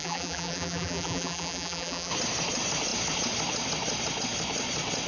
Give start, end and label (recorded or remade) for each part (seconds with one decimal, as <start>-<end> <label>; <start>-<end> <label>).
0.0-2.1 remade; 2.1-5.1 recorded